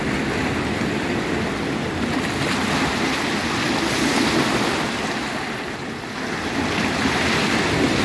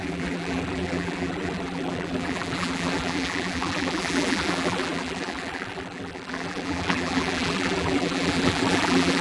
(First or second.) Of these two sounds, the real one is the first